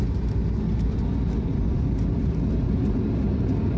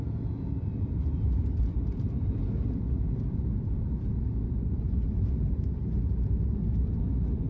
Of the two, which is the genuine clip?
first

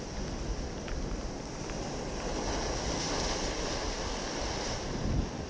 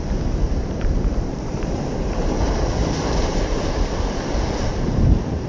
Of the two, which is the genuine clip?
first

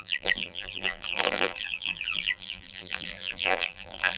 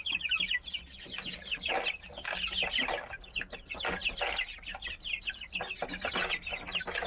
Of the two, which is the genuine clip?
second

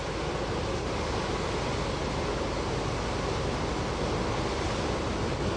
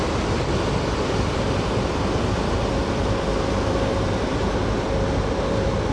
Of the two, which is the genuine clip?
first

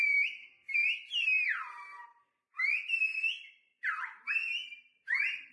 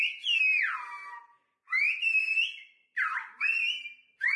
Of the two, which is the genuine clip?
second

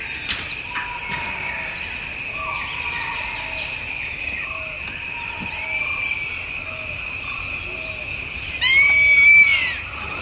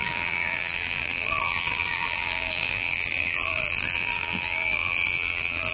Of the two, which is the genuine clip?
first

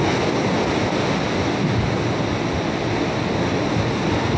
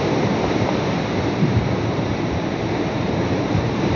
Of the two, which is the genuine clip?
first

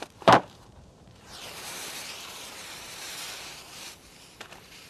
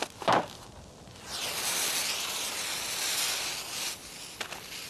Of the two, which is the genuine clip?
second